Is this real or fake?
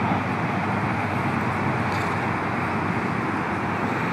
real